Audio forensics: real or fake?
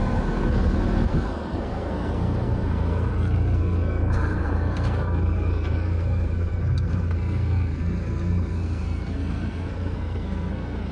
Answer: fake